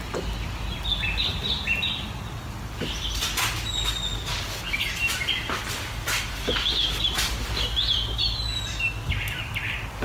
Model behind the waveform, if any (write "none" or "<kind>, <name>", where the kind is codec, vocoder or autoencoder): none